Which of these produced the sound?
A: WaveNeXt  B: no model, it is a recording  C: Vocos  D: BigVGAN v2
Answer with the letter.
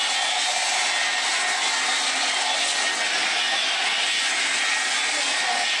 B